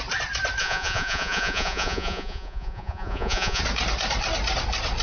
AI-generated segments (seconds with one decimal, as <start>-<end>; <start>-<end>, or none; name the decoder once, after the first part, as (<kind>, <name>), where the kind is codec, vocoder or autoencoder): 0.6-3.6 (vocoder, Vocos)

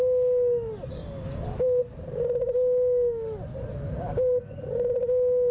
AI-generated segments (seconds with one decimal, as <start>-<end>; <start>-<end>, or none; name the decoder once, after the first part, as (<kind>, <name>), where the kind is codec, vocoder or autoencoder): none

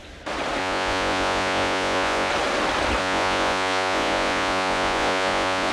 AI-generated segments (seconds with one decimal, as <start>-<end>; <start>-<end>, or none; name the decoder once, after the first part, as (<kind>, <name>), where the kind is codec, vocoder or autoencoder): 0.6-2.3 (vocoder, Vocos); 3.0-5.7

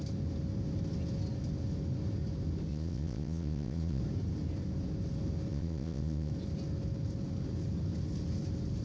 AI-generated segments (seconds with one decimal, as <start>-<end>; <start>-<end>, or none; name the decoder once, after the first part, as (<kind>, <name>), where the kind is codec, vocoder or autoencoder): 2.7-4.0 (vocoder, Vocos); 5.5-6.3